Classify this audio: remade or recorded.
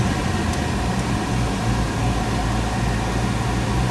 recorded